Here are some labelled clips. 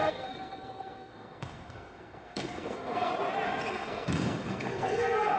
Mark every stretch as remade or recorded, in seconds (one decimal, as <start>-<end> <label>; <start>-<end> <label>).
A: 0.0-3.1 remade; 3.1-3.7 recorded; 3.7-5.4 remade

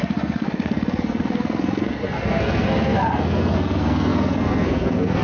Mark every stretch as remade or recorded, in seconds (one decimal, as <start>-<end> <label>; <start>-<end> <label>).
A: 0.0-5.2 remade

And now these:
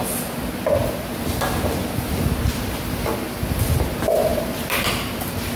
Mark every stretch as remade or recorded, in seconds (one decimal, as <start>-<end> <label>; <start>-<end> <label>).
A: 0.0-0.8 recorded; 0.8-3.9 remade; 3.9-4.3 recorded; 4.3-5.6 remade

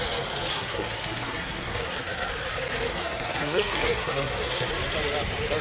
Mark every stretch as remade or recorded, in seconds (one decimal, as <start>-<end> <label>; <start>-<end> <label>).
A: 0.0-0.5 recorded; 0.5-2.3 remade; 2.3-2.9 recorded; 2.9-4.7 remade; 4.7-5.6 recorded

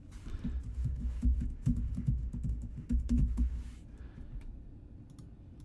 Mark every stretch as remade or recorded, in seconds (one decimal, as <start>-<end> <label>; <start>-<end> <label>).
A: 0.0-0.7 recorded; 0.7-3.6 remade; 3.6-5.6 recorded

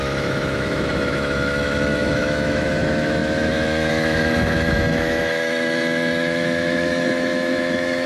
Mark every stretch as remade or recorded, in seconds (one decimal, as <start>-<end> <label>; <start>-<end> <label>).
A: 0.0-8.1 remade

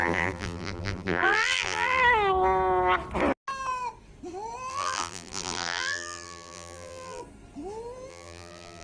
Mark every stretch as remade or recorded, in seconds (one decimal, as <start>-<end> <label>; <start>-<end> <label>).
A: 0.0-2.0 remade; 2.0-4.7 recorded; 4.7-7.2 remade; 7.2-8.1 recorded; 8.1-8.8 remade